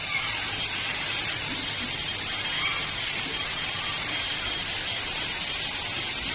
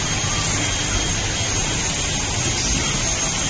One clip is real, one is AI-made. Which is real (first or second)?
second